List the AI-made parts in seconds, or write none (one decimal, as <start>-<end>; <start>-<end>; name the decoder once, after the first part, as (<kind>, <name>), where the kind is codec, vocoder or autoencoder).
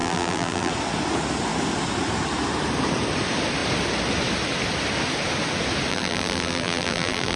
0.0-0.7 (vocoder, BigVGAN v2); 5.9-7.4